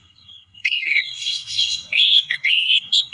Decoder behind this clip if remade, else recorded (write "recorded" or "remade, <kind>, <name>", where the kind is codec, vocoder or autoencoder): remade, codec, SNAC